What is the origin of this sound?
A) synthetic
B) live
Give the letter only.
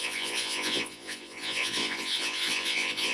A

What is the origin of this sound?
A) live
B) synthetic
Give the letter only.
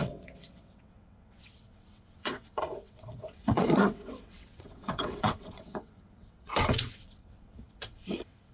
B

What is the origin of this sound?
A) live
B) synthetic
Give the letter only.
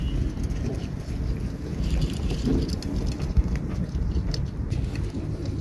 A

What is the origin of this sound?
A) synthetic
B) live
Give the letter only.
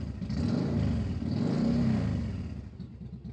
B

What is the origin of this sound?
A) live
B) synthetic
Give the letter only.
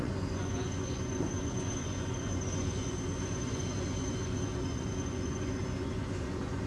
B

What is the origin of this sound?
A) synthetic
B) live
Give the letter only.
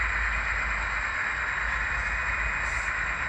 B